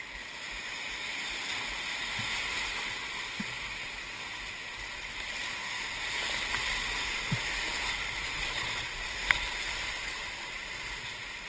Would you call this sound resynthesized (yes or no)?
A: no